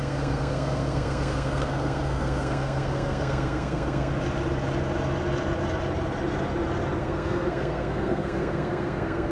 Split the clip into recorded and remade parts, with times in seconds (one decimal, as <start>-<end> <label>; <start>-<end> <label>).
0.0-4.1 remade; 4.1-7.0 recorded; 7.0-9.3 remade